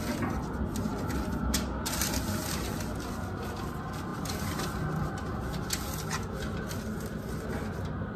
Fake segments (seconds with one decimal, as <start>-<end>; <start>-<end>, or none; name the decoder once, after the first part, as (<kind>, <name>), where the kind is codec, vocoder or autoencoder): none